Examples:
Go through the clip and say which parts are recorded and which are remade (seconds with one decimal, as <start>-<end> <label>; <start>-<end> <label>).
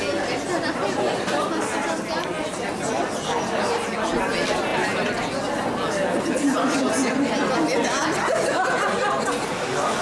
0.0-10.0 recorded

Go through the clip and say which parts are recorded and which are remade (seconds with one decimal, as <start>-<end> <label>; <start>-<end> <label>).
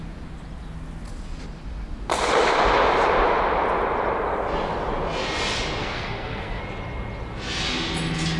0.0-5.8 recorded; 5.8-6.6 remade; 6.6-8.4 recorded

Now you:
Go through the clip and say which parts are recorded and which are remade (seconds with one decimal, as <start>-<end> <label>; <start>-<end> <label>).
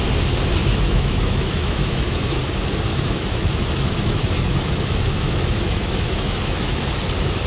0.0-0.6 recorded; 0.6-2.4 remade; 2.4-2.9 recorded; 2.9-6.9 remade; 6.9-7.5 recorded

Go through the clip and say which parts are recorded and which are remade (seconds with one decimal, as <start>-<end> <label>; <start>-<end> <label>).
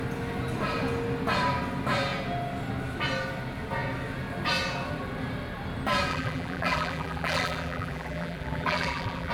0.0-6.1 recorded; 6.1-9.3 remade